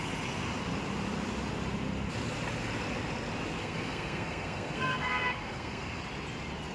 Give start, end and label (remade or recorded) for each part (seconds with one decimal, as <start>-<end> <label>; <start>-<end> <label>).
0.0-3.6 recorded; 3.6-6.0 remade; 6.0-6.7 recorded